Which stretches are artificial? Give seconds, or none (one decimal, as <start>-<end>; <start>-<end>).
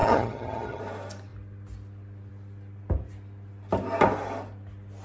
0.0-0.8